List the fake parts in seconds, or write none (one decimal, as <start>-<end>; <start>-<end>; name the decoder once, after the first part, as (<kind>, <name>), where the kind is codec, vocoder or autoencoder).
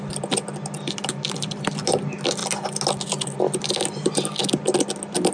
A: none